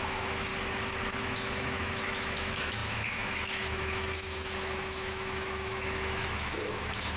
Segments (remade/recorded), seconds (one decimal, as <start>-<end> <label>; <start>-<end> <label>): 0.0-0.5 remade; 0.5-1.2 recorded; 1.2-7.2 remade